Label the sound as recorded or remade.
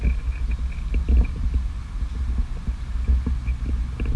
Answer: recorded